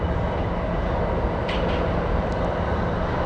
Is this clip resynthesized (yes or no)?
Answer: no